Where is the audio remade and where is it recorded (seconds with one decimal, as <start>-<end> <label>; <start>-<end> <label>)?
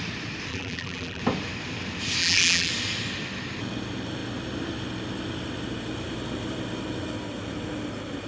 0.0-0.5 recorded; 0.5-1.2 remade; 1.2-2.2 recorded; 2.2-2.7 remade; 2.7-8.3 recorded